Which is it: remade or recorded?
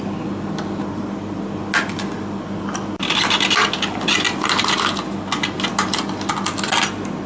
recorded